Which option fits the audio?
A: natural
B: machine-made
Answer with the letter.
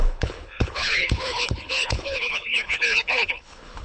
B